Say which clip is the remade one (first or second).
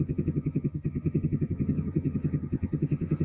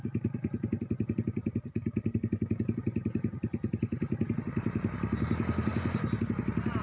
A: first